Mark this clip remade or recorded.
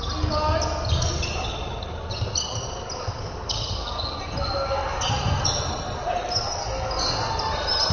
recorded